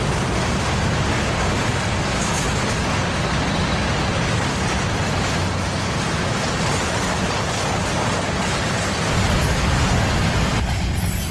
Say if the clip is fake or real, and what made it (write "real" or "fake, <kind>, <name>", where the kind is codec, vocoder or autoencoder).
real